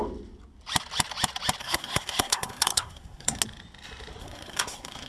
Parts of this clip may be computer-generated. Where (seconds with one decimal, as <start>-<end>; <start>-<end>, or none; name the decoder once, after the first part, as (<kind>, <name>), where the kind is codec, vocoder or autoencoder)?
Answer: 1.6-3.4 (codec, SNAC); 4.2-5.1